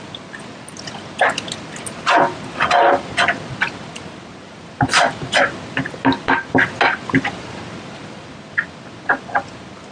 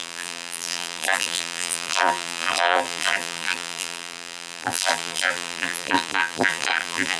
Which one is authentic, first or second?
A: first